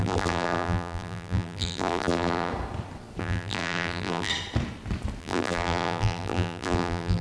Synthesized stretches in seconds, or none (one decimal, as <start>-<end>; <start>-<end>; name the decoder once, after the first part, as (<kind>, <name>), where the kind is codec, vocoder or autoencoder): 0.0-2.5 (vocoder, BigVGAN v2); 3.2-4.3; 5.2-7.2